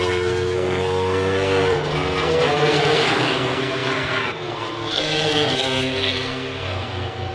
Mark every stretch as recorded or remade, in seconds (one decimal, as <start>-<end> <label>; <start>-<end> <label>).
0.0-7.3 remade